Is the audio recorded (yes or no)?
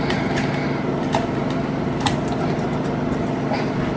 yes